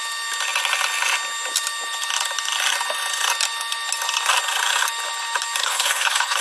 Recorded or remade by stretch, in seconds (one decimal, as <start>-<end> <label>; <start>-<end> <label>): 0.0-5.6 recorded; 5.6-6.4 remade